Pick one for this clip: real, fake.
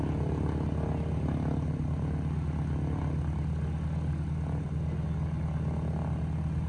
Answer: real